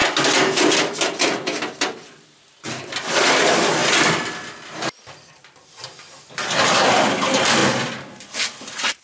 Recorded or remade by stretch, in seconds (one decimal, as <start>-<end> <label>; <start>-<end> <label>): 0.0-2.8 recorded; 2.8-3.8 remade; 3.8-6.6 recorded; 6.6-7.6 remade; 7.6-8.6 recorded; 8.6-9.0 remade